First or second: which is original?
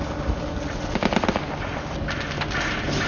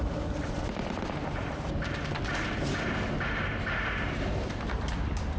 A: first